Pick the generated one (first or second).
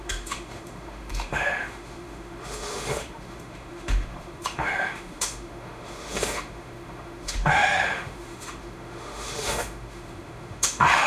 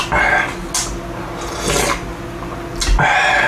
first